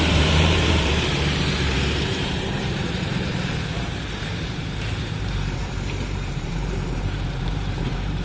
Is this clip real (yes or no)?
no